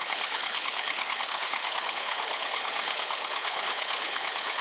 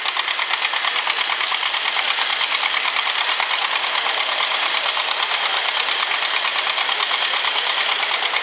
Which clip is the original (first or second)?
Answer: second